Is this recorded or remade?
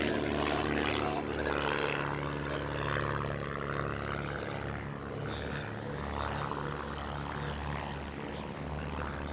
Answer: recorded